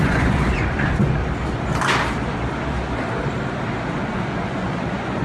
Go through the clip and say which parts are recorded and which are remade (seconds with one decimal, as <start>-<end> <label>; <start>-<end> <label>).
0.0-1.2 remade; 1.2-3.9 recorded; 3.9-5.2 remade